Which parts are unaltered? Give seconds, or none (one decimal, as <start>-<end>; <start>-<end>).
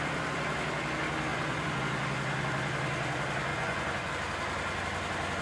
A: 0.0-1.3; 1.8-3.5; 4.1-5.4